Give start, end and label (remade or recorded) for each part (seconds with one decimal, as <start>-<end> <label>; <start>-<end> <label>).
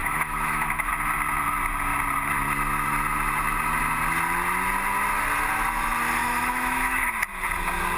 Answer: 0.0-0.9 remade; 0.9-6.2 recorded; 6.2-7.1 remade; 7.1-8.0 recorded